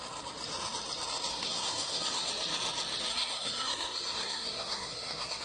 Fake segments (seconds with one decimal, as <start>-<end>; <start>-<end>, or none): 1.3-2.3; 3.1-5.4